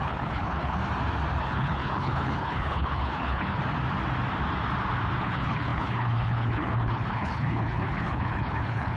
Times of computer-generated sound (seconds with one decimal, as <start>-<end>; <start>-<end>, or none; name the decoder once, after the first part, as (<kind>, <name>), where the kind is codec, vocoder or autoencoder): 0.0-0.8 (codec, HILCodec); 1.4-3.6; 5.2-9.0